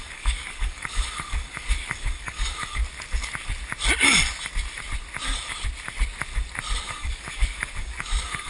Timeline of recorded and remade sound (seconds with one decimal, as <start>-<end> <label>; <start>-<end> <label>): 0.0-2.8 remade; 2.8-6.8 recorded; 6.8-8.5 remade